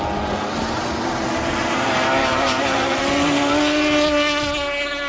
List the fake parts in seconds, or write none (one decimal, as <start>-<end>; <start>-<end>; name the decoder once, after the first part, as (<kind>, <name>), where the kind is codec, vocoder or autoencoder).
2.2-3.0 (vocoder, BigVGAN v2)